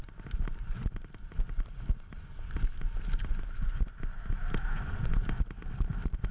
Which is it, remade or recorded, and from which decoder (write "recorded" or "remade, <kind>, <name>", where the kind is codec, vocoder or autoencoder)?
recorded